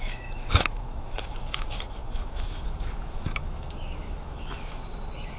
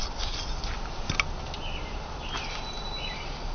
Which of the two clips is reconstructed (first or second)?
first